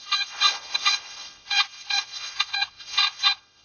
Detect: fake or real fake